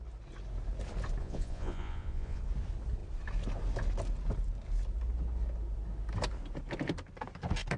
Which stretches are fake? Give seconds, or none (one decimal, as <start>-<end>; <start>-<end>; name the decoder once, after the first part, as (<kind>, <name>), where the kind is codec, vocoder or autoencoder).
1.2-2.4 (vocoder, Vocos)